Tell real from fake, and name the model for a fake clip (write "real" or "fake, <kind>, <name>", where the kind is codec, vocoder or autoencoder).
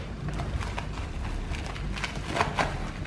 real